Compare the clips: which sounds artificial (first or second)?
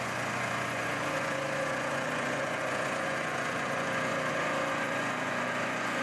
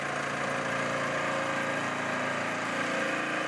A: first